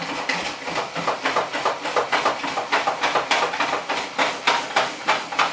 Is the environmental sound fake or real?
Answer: real